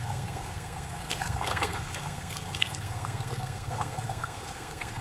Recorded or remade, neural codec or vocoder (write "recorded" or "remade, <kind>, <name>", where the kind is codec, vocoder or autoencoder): remade, codec, SNAC